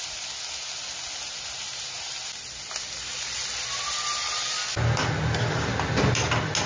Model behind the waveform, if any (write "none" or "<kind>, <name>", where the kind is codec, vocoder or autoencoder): none